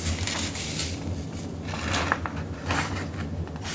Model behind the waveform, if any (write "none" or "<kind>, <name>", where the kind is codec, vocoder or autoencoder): none